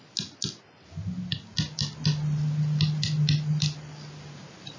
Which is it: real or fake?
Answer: real